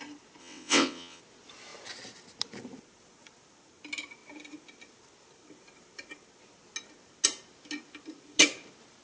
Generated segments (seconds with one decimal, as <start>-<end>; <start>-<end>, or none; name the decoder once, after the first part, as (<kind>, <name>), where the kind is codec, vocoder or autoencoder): 0.4-1.2 (vocoder, WaveNeXt)